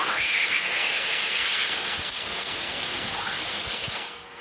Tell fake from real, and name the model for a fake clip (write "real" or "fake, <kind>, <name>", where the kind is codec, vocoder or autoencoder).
fake, codec, SNAC